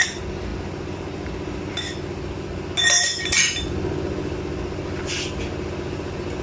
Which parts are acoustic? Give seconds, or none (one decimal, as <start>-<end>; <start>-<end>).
0.0-6.4